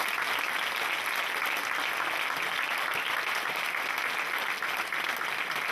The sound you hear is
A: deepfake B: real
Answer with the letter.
B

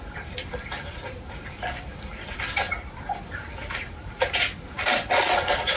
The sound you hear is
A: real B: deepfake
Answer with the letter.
B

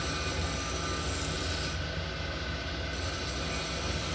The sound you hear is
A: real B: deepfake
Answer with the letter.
A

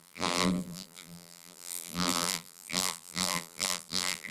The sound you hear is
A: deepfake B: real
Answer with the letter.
A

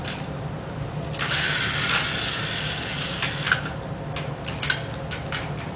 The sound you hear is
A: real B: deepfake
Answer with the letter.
A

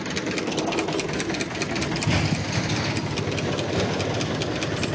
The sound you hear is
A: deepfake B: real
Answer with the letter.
B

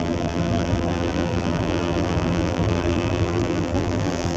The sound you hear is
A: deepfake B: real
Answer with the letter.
A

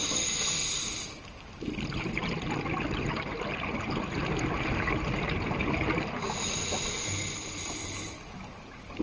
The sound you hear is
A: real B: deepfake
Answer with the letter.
A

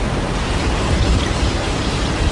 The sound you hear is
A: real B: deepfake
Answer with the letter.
B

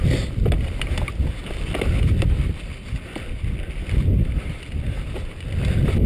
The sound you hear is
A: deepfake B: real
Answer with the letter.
A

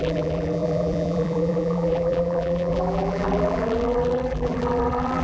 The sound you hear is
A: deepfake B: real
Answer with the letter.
A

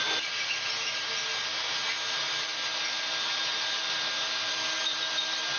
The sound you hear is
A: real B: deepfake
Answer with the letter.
A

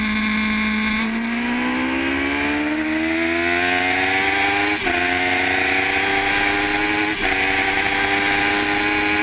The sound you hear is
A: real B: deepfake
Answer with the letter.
A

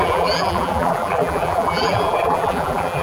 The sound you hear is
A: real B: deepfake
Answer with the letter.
B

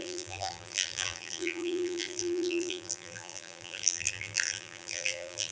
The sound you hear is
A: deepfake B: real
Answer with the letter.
A